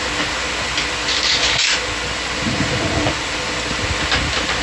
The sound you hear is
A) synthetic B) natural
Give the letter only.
B